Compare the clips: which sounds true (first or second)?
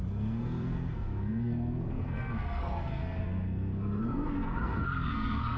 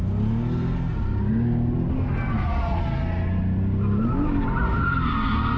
second